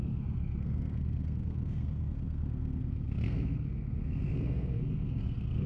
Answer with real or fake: fake